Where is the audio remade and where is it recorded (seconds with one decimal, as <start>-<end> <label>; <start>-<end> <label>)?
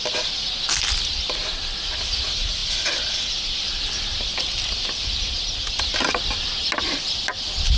0.0-7.8 recorded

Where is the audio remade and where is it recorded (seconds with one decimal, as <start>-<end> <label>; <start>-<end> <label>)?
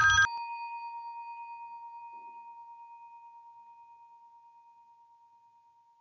0.0-6.0 recorded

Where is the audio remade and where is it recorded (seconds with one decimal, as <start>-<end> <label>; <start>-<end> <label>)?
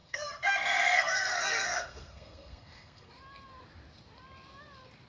0.0-3.1 remade; 3.1-5.1 recorded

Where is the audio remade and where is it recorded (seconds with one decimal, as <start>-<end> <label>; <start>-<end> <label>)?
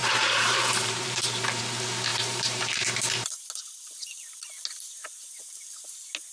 0.0-1.6 remade; 1.6-2.1 recorded; 2.1-2.6 remade; 2.6-6.3 recorded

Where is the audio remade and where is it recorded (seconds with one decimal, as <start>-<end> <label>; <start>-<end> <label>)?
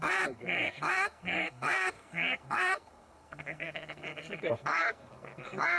0.0-5.8 remade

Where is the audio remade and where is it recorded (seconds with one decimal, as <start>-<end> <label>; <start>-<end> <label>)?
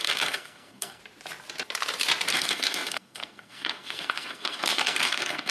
0.0-1.0 remade; 1.0-2.3 recorded; 2.3-5.5 remade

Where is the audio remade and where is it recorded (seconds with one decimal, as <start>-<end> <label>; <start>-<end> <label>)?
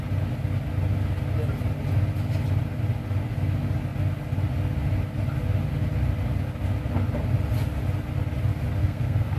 0.0-8.8 recorded; 8.8-9.4 remade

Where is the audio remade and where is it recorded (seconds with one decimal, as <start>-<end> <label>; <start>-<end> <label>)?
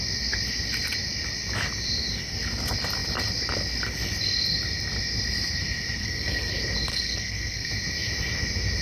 0.0-6.0 recorded; 6.0-6.5 remade; 6.5-6.9 recorded; 6.9-7.7 remade; 7.7-8.8 recorded